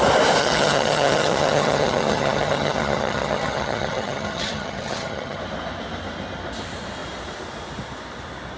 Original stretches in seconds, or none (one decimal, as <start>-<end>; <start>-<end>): 0.0-0.4; 5.4-8.6